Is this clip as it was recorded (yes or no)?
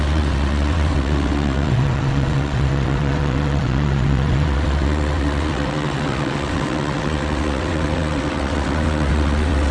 no